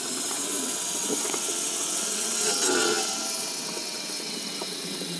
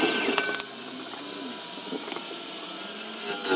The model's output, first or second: first